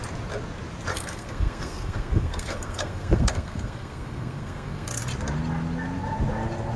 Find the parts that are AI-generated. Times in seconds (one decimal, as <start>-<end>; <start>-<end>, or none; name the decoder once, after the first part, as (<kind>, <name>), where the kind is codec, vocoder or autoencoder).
0.9-5.0 (codec, SNAC)